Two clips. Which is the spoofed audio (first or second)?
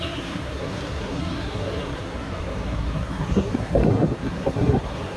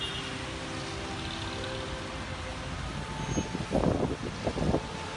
first